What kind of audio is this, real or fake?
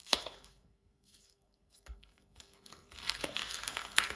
fake